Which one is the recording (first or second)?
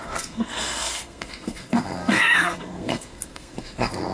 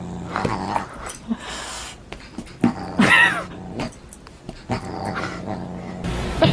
second